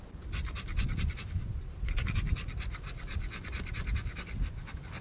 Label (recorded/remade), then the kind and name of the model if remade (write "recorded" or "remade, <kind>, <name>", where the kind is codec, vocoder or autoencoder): recorded